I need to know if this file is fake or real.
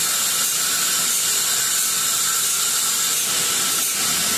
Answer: real